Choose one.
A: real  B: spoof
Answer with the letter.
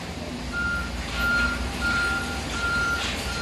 B